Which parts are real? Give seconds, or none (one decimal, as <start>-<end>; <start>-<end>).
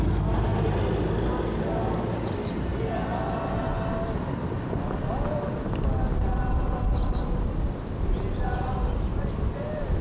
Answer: 0.0-10.0